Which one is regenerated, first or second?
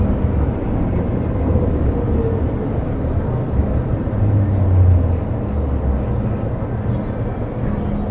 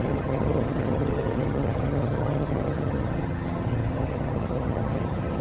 second